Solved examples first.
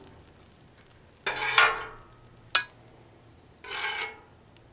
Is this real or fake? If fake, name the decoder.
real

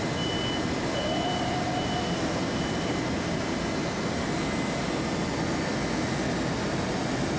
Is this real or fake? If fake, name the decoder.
real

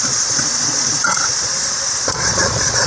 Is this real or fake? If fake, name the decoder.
fake, vocoder, Vocos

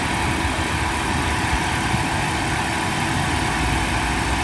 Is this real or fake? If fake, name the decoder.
fake, vocoder, BigVGAN v2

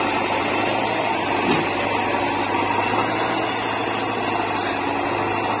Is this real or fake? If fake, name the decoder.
real